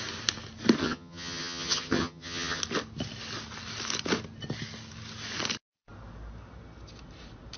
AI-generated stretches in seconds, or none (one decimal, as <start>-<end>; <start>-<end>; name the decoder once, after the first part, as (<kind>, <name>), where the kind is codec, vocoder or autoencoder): 0.8-2.6 (vocoder, HiFi-GAN)